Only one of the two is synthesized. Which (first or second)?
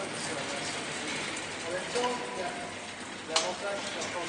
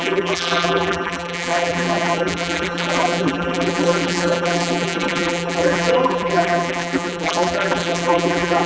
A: second